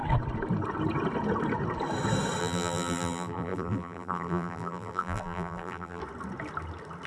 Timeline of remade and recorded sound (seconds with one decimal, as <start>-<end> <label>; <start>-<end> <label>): 0.0-2.4 recorded; 2.4-6.0 remade; 6.0-7.1 recorded